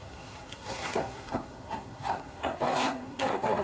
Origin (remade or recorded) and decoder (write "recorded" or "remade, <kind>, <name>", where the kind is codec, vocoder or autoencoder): remade, codec, SNAC